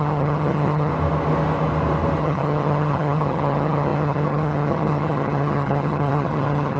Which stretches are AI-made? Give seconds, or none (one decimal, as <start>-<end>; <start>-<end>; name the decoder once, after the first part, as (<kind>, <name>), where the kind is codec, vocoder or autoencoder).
0.0-0.9 (vocoder, HiFi-GAN); 2.2-6.8